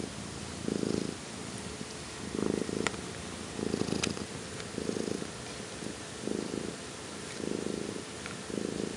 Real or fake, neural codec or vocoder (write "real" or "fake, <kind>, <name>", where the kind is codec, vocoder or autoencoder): real